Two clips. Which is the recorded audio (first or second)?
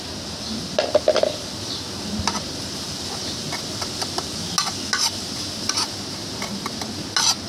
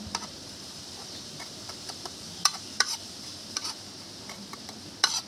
first